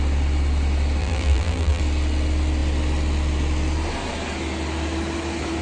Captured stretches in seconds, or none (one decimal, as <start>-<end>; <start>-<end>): 0.0-1.0; 1.8-5.6